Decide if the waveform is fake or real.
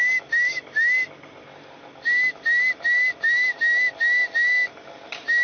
real